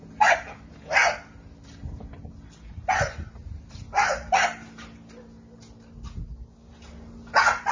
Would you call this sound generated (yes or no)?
no